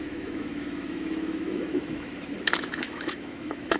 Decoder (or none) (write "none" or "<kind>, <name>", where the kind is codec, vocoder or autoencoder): autoencoder, DAC-VAE